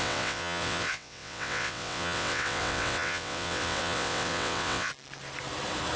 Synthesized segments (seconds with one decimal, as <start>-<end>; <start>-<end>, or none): 0.0-4.9